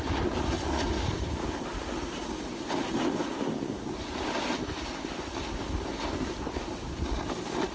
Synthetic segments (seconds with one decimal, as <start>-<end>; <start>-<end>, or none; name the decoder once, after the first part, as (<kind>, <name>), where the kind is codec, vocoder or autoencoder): none